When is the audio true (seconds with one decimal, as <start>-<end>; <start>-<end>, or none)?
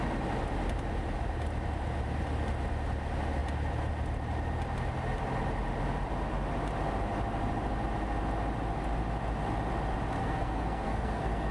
0.0-10.2